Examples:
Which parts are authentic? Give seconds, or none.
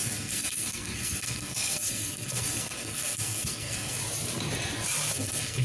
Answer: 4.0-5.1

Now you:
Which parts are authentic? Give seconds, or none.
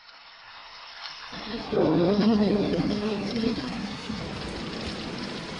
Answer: 4.2-5.6